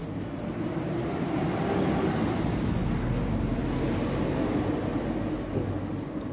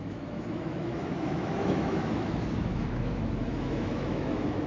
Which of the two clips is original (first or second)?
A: first